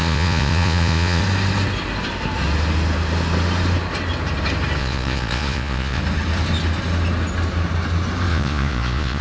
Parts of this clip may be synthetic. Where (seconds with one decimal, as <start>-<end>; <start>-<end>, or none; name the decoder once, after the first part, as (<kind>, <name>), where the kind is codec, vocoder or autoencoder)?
0.0-1.2 (vocoder, Vocos); 4.8-6.0; 8.3-9.2